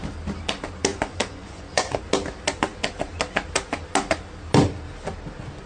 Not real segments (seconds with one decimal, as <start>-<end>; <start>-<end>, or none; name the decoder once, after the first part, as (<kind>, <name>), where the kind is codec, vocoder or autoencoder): 0.9-2.0 (vocoder, Vocos)